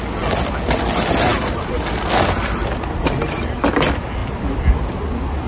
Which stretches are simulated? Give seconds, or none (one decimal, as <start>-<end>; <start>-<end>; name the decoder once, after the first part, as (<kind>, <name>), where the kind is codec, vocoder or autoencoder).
none